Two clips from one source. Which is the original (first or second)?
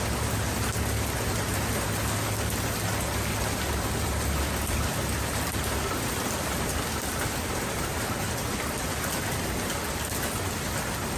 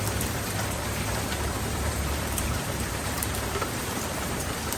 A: first